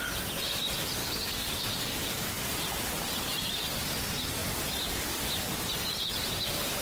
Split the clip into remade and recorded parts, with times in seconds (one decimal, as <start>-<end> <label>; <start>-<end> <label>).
0.0-1.0 recorded; 1.0-2.5 remade; 2.5-6.8 recorded